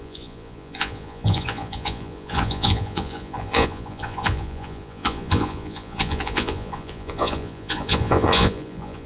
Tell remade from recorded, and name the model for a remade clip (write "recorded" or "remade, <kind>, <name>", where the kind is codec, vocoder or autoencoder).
remade, vocoder, Vocos